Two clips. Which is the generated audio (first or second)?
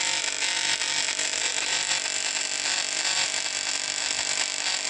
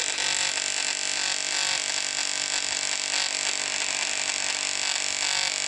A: first